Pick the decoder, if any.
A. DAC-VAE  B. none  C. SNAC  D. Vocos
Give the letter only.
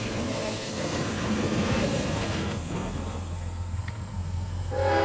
C